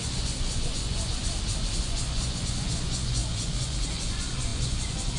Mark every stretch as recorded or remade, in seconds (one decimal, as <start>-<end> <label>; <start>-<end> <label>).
0.0-1.2 remade; 1.2-1.8 recorded; 1.8-5.2 remade